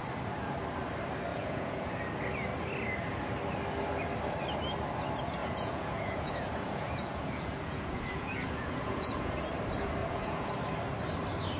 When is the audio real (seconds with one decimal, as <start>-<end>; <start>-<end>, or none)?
0.0-1.3; 1.9-5.4; 9.4-10.0; 10.5-11.6